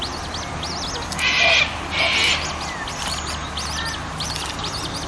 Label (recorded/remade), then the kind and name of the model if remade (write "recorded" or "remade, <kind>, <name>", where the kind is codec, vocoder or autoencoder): recorded